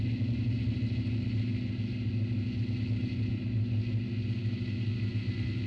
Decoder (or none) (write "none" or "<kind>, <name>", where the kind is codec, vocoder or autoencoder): none